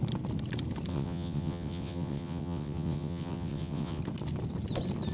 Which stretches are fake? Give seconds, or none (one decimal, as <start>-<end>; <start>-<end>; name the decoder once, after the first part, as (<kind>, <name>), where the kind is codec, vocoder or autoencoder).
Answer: 0.9-4.0 (vocoder, WaveNeXt)